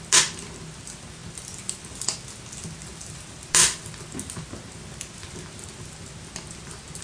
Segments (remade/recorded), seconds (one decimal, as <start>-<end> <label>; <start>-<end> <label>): 0.0-7.0 recorded